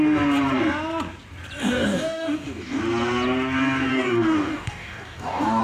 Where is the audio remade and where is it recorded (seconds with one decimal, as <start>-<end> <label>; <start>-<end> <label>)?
0.0-1.6 recorded; 1.6-2.8 remade; 2.8-3.9 recorded; 3.9-5.6 remade